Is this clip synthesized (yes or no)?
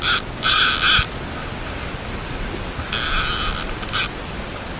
no